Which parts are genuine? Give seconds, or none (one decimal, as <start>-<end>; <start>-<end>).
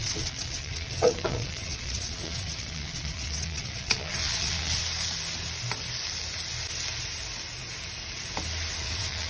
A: 4.8-8.8